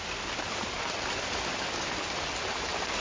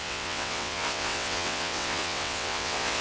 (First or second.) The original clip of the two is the first